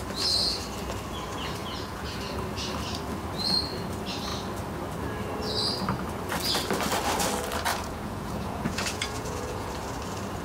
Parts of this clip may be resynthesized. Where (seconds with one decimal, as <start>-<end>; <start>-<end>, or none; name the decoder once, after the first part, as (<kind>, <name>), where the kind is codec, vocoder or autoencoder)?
1.6-2.2 (vocoder, Vocos); 7.7-9.7